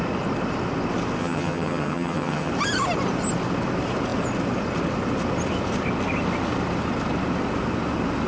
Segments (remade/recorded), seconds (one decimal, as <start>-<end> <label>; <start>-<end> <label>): 0.0-1.2 recorded; 1.2-2.5 remade; 2.5-8.3 recorded